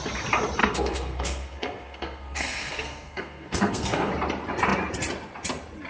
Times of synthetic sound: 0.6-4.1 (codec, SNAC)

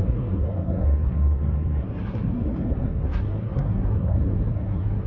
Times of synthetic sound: 0.0-5.1 (codec, SNAC)

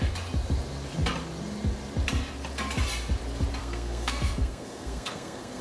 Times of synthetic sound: 3.6-5.6 (codec, SNAC)

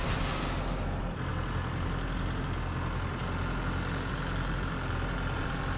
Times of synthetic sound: none

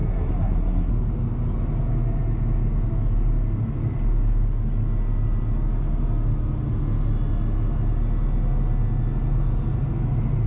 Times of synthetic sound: 0.0-0.9 (codec, SNAC)

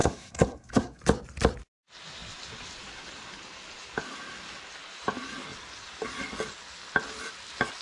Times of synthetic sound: 0.0-1.0 (codec, SNAC)

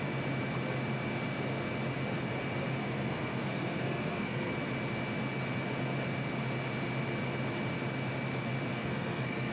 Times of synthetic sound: 2.8-4.5 (codec, SNAC); 8.7-9.5

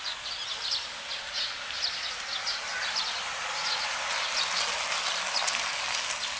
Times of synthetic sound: none